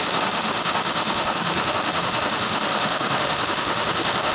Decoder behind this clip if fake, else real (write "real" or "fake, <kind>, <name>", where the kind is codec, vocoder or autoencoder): fake, autoencoder, DAC-VAE